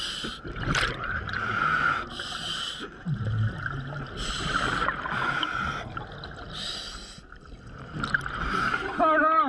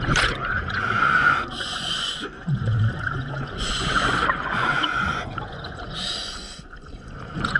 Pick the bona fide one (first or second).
first